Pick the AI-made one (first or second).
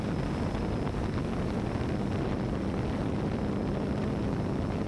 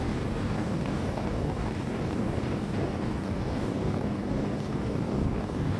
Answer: second